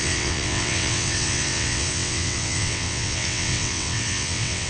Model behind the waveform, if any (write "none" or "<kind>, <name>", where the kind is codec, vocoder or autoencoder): vocoder, WaveNeXt